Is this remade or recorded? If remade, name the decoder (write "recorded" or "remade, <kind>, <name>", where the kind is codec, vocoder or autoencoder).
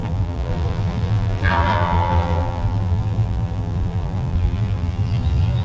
remade, vocoder, BigVGAN v2